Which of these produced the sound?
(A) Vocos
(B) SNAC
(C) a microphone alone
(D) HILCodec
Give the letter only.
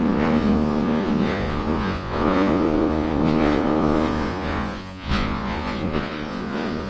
A